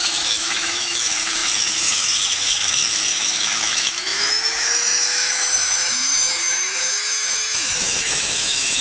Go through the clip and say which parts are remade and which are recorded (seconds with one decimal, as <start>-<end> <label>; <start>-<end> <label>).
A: 0.0-8.8 remade